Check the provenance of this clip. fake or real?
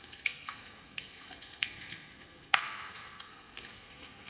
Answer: fake